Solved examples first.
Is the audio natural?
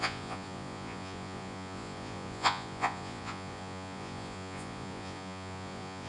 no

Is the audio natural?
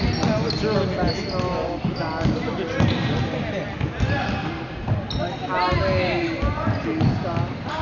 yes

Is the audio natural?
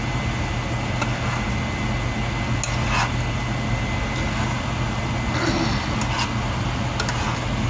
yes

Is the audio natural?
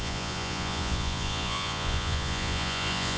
no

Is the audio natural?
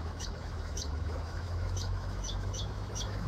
no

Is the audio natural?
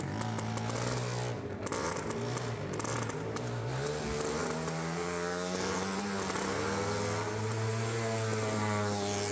yes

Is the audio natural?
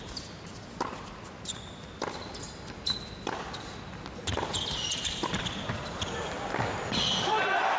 yes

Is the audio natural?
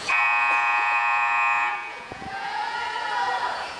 no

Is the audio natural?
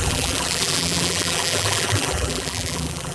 no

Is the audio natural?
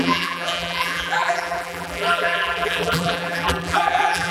no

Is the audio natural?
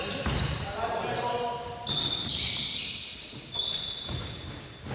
yes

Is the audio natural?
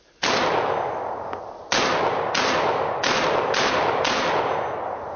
yes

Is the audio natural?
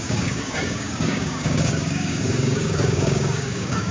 no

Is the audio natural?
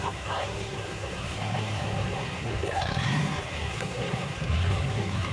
no